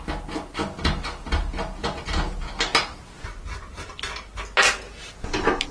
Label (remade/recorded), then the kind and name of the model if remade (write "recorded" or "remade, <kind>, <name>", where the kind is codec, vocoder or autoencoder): recorded